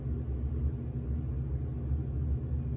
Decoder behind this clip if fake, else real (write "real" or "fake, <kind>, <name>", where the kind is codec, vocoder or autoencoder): real